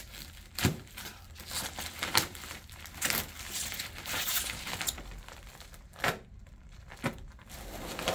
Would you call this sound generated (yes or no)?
yes